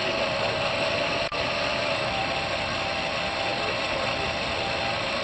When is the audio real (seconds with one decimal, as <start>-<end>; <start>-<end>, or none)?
0.0-5.2